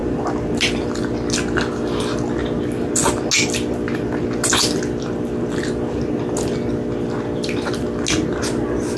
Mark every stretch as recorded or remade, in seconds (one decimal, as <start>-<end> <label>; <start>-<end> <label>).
0.0-9.0 recorded